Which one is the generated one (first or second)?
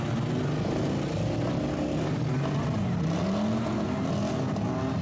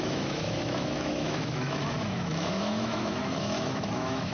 second